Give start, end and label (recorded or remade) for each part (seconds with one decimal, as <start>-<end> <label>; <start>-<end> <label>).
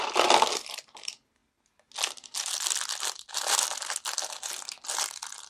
0.0-5.5 recorded